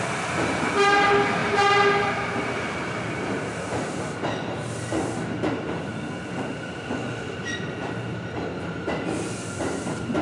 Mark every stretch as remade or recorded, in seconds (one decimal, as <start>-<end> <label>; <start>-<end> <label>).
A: 0.0-1.4 recorded; 1.4-3.4 remade; 3.4-10.2 recorded